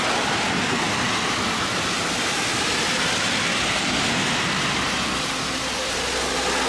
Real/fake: real